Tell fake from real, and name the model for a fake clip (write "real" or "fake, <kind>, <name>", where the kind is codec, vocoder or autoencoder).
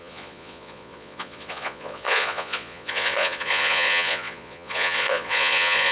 fake, vocoder, Vocos